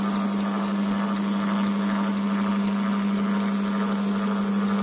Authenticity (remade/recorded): recorded